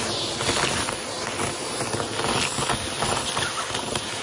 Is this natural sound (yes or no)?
yes